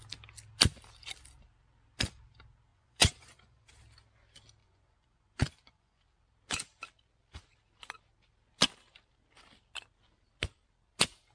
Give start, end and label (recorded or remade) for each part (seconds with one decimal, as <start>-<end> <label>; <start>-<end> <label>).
0.0-2.7 recorded; 2.7-3.8 remade; 3.8-4.6 recorded; 4.6-6.0 remade; 6.0-11.3 recorded